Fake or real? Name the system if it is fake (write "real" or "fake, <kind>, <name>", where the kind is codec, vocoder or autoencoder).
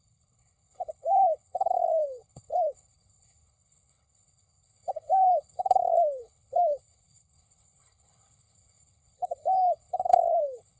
fake, codec, HILCodec